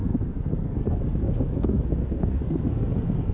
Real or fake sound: fake